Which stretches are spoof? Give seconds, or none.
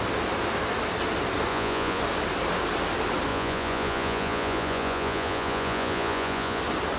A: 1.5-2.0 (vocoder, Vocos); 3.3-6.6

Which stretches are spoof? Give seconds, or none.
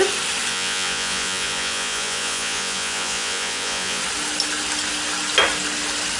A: 0.5-4.0 (vocoder, Vocos)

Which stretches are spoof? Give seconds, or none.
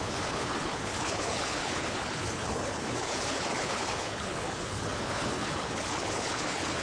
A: 0.0-6.8 (codec, HILCodec)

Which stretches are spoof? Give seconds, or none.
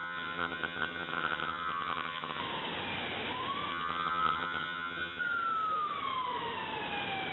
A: 0.0-2.4 (vocoder, HiFi-GAN); 3.7-5.2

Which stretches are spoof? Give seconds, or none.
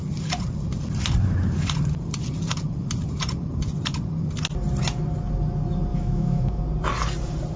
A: 5.9-6.6 (autoencoder, DAC-VAE)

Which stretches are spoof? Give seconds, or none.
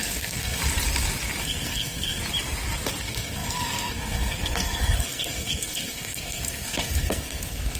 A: 0.0-0.6 (codec, SNAC); 1.4-2.2; 3.0-7.8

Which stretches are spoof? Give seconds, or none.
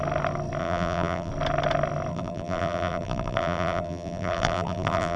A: 0.6-1.3 (vocoder, BigVGAN v2); 2.1-5.2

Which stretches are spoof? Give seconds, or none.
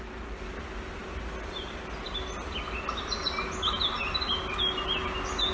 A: none